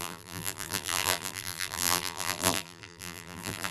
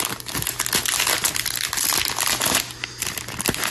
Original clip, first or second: second